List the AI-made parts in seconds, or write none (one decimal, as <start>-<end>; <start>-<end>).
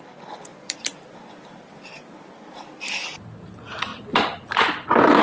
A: 0.5-1.0; 3.9-5.2